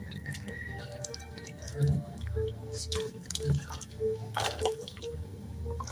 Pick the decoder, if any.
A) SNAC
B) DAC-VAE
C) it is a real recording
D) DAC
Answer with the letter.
A